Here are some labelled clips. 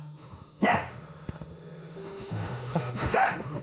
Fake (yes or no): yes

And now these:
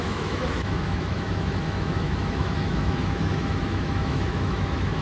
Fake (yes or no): yes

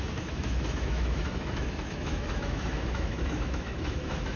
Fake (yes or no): yes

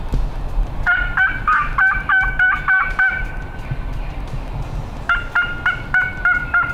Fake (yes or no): no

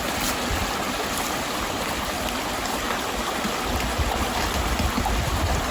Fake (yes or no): no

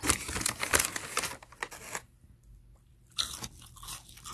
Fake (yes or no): no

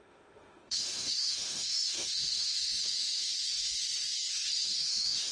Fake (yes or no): yes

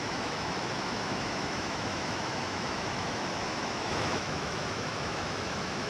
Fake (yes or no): yes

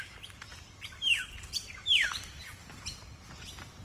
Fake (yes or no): no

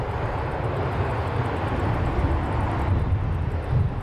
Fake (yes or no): no